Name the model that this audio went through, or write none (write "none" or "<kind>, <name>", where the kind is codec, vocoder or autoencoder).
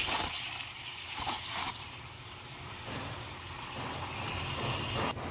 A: none